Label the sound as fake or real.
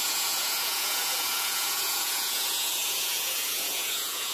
fake